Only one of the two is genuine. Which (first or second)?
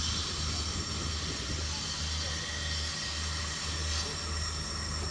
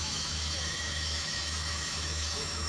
first